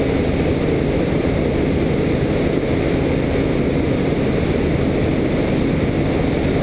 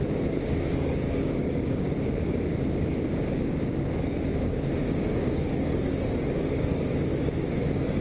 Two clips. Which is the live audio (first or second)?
first